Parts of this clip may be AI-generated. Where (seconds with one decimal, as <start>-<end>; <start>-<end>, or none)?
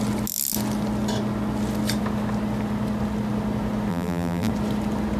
3.9-4.5